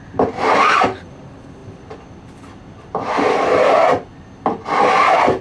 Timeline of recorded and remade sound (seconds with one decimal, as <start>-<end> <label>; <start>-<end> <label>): 0.0-5.4 recorded